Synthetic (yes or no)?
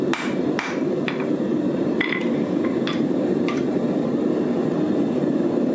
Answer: yes